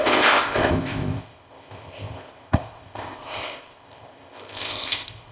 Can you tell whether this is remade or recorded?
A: remade